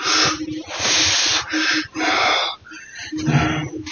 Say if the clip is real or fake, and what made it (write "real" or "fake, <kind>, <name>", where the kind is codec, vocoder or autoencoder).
real